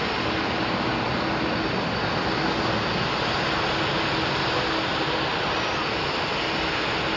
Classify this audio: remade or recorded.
recorded